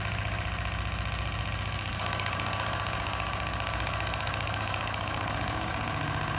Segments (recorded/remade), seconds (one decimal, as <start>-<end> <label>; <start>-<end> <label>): 0.0-1.9 recorded; 1.9-5.7 remade; 5.7-6.4 recorded